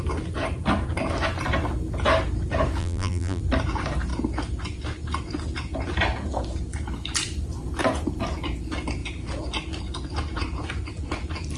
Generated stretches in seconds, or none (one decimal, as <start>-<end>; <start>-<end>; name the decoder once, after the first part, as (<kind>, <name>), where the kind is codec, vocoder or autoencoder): 2.8-3.4 (vocoder, BigVGAN v2)